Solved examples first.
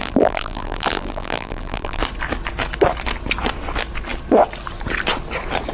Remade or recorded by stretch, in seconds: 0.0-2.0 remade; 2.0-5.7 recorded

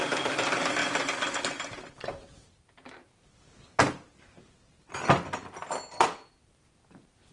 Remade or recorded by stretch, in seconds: 0.0-7.3 recorded